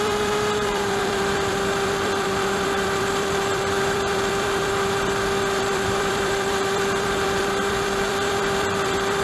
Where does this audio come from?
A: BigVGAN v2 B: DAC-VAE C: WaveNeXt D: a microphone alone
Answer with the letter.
A